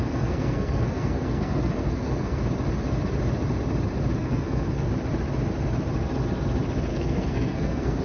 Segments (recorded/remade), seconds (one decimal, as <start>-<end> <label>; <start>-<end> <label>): 0.0-2.4 remade; 2.4-4.2 recorded; 4.2-4.9 remade; 4.9-6.9 recorded; 6.9-8.0 remade